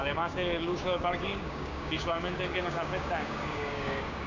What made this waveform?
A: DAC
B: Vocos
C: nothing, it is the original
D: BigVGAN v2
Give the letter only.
A